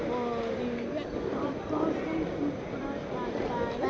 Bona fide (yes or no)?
yes